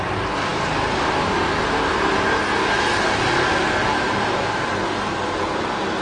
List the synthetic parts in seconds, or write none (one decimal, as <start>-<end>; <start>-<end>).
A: none